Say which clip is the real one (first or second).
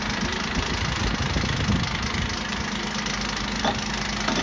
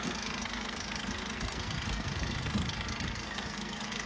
first